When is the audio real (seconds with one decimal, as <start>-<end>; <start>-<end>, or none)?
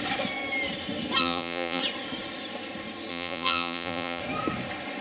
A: 0.0-1.2; 1.8-3.1; 4.2-5.0